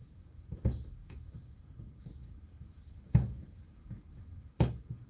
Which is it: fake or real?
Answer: fake